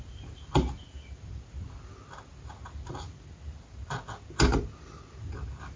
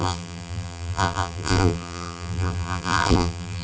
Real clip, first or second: first